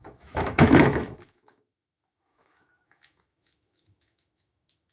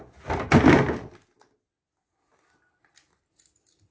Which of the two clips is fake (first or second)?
first